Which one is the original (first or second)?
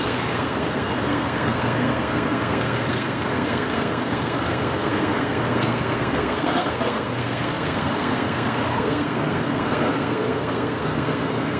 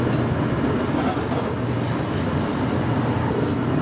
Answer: second